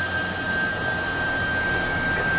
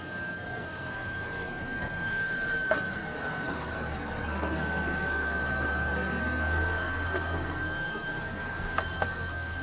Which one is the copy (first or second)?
second